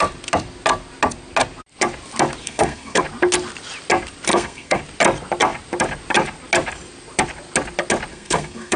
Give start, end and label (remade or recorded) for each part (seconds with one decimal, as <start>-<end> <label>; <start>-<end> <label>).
0.0-2.4 recorded; 2.4-3.0 remade; 3.0-4.3 recorded; 4.3-4.8 remade; 4.8-8.1 recorded; 8.1-8.8 remade